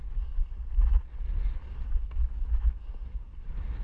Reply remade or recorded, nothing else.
recorded